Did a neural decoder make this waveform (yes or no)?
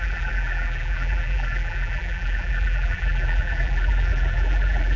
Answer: yes